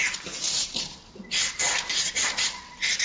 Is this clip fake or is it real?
real